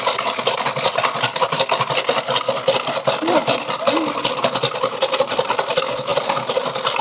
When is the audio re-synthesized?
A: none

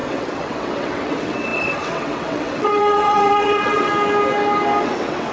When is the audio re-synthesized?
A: 0.0-3.9 (vocoder, WaveNeXt); 4.8-5.3

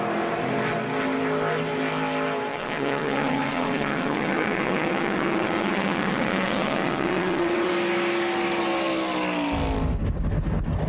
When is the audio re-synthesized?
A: 2.5-7.7 (vocoder, WaveNeXt)

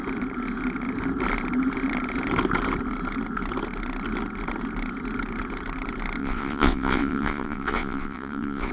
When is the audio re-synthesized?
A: 6.2-8.7 (vocoder, WaveNeXt)

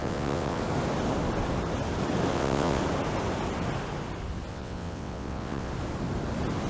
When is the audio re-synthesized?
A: 0.0-0.6 (vocoder, WaveNeXt); 2.3-2.8; 4.5-5.7